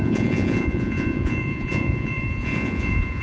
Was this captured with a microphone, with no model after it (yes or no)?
no